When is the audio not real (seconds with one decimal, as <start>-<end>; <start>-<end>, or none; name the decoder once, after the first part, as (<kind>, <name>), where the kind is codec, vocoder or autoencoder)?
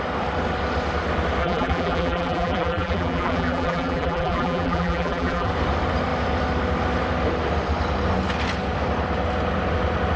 1.4-5.5 (vocoder, BigVGAN v2)